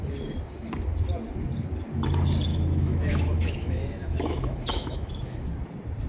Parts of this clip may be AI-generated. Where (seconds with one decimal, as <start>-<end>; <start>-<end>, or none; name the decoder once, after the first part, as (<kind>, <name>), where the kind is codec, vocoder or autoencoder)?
2.5-5.5 (autoencoder, DAC-VAE)